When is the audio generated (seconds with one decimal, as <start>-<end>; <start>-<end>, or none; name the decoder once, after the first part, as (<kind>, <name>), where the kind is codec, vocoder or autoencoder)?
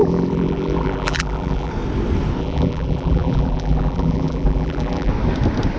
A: 0.0-1.7 (vocoder, BigVGAN v2); 2.4-5.1